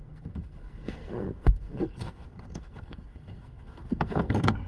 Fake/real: fake